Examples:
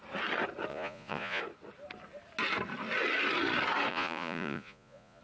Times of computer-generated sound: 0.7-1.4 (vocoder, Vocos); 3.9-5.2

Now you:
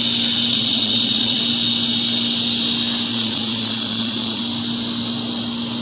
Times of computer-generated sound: 0.5-1.4 (vocoder, Vocos); 3.1-4.4

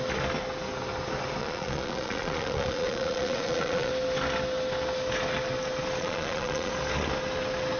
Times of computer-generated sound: 1.4-3.9 (vocoder, Vocos); 6.0-6.7

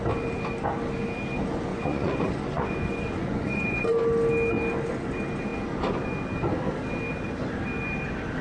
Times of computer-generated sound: 1.7-3.8 (vocoder, Vocos)